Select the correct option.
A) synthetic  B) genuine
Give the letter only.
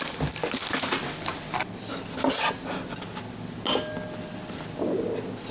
B